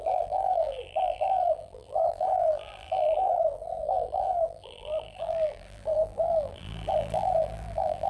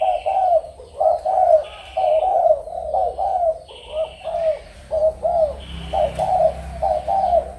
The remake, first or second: first